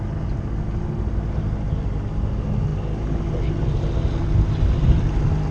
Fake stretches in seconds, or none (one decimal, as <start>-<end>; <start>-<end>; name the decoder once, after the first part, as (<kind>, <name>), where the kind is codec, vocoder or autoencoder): none